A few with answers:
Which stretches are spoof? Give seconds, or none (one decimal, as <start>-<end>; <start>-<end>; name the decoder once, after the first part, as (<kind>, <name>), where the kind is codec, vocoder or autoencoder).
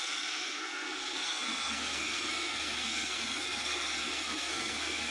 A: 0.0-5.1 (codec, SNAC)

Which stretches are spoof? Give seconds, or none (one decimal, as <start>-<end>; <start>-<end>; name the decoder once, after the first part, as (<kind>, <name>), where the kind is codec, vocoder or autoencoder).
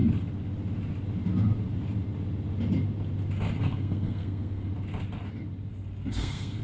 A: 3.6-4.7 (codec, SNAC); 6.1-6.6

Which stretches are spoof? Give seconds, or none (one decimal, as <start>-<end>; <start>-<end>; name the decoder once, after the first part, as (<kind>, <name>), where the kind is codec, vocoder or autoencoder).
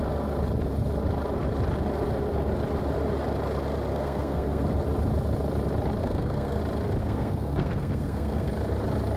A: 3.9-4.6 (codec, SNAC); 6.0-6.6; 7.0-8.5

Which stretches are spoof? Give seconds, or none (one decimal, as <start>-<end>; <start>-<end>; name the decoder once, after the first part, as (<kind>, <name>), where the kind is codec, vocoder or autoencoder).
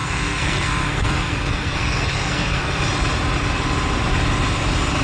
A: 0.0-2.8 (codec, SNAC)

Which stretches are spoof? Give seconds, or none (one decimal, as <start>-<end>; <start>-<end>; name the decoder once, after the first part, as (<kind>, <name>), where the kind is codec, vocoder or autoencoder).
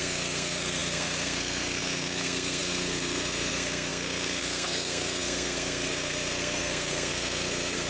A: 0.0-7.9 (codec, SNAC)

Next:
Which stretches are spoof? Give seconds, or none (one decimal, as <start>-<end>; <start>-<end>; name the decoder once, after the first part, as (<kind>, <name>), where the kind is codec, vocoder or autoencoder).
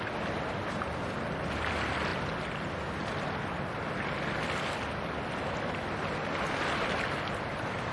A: none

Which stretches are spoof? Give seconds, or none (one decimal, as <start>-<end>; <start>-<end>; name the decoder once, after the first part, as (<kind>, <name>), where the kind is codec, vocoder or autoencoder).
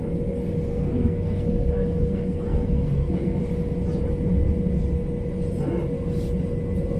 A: 0.7-3.4 (codec, SNAC)